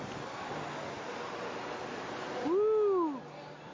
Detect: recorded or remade recorded